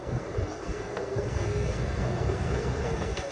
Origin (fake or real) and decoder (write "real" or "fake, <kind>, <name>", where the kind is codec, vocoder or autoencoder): fake, codec, SNAC